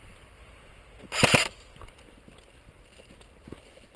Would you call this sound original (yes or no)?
yes